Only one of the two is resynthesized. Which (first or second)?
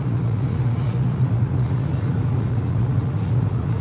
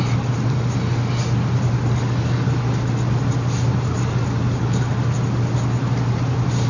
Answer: first